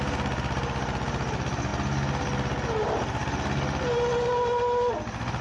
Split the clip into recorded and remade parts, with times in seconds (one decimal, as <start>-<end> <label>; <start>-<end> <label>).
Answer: 0.0-5.4 recorded

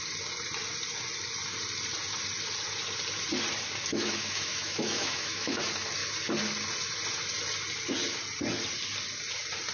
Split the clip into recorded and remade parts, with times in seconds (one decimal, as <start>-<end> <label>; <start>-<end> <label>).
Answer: 0.0-3.9 recorded; 3.9-5.6 remade; 5.6-9.7 recorded

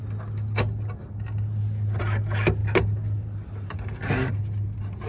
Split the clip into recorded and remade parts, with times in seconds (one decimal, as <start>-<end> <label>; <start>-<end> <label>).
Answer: 0.0-5.1 recorded